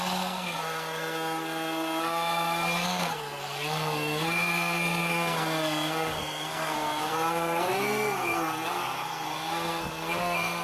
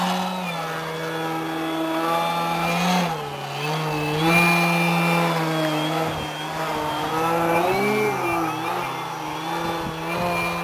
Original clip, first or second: second